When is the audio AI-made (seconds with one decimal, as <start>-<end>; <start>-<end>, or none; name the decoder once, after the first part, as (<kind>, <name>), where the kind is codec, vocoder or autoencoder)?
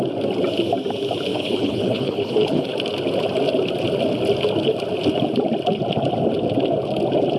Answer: 1.3-2.7 (codec, HILCodec)